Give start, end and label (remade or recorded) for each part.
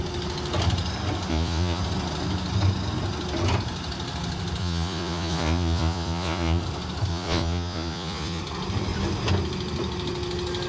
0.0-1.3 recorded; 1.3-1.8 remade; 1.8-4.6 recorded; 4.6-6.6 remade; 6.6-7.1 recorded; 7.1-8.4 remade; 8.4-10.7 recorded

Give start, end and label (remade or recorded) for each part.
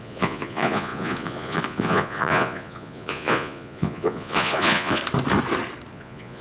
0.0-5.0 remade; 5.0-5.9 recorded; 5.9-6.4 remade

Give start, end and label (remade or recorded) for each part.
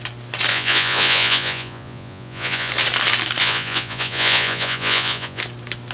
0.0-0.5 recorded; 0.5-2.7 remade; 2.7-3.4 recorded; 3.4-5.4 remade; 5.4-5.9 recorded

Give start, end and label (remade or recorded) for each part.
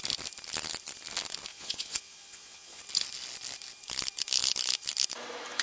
0.0-1.5 recorded; 1.5-2.8 remade; 2.8-5.6 recorded